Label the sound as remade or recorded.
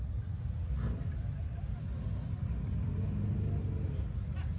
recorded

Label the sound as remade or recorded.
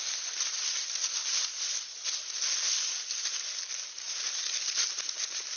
recorded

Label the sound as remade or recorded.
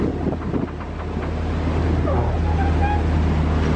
recorded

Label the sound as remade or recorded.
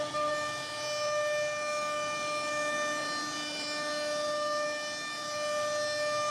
recorded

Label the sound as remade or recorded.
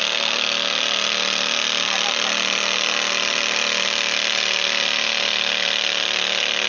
recorded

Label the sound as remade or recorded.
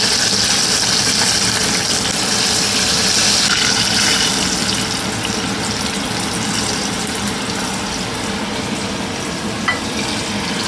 recorded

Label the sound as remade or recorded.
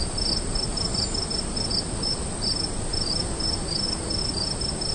recorded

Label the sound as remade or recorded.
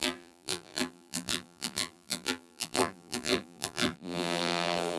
remade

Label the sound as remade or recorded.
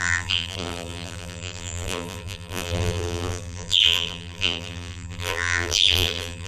remade